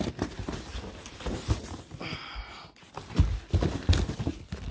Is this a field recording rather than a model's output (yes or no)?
yes